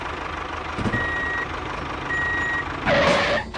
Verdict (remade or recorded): recorded